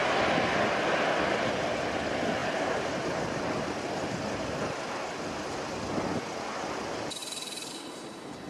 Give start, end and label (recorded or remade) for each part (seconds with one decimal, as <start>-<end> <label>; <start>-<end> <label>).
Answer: 0.0-0.6 remade; 0.6-2.4 recorded; 2.4-4.9 remade; 4.9-7.2 recorded; 7.2-8.5 remade